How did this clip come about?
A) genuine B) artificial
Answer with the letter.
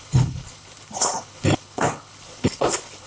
B